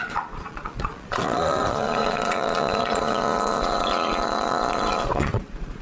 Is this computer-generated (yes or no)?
yes